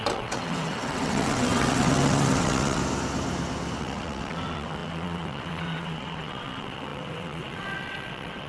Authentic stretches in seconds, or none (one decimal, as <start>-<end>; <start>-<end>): 2.8-3.8